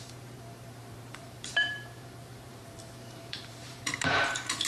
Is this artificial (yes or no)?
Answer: yes